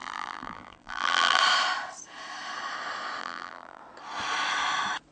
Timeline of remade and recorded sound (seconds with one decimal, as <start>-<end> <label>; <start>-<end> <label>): 0.0-1.4 remade; 1.4-3.2 recorded; 3.2-3.8 remade; 3.8-5.1 recorded